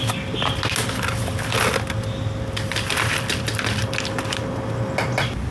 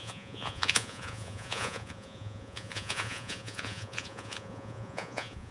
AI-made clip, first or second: second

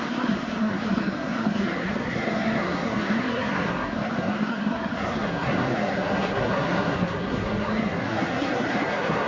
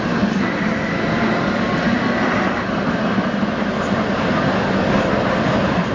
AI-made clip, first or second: first